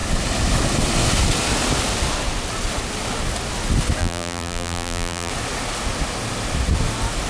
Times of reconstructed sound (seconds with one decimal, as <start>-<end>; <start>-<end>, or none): 4.0-5.3